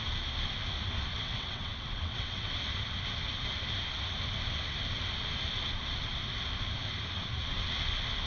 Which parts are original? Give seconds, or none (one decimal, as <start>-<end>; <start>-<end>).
0.0-1.1; 2.5-8.3